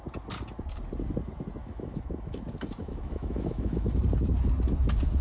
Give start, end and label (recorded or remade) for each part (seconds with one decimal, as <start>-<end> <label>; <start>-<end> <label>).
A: 0.0-1.6 recorded; 1.6-2.4 remade; 2.4-2.8 recorded; 2.8-3.9 remade; 3.9-5.2 recorded